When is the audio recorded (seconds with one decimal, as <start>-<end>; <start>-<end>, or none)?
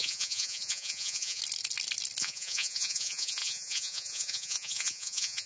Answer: 1.4-2.2